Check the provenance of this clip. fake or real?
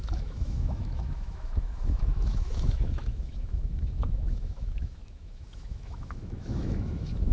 fake